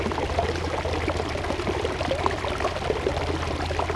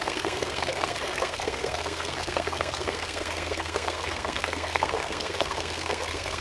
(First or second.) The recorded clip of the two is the first